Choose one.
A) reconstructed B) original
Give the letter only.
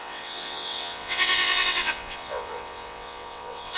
A